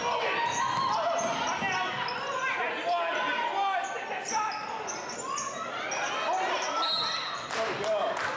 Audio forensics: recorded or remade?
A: recorded